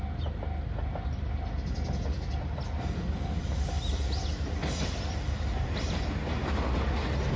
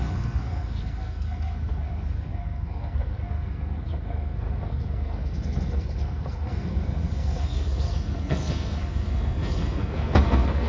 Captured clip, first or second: first